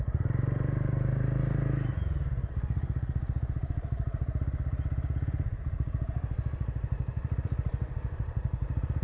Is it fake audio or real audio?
fake